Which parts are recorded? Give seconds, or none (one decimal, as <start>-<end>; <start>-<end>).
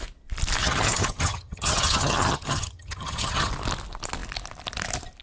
0.0-0.6; 3.5-5.2